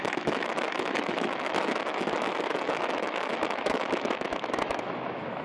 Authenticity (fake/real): fake